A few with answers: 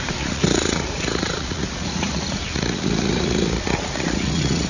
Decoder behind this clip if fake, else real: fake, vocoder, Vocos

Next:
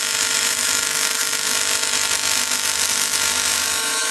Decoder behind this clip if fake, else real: fake, autoencoder, DAC-VAE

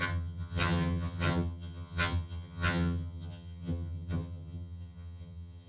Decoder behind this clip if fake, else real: fake, vocoder, HiFi-GAN